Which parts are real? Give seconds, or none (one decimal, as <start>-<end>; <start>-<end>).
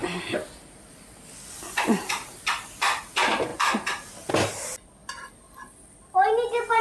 0.0-6.8